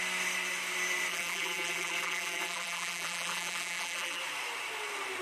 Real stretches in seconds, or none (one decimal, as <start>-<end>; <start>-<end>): 0.0-1.1; 4.2-5.2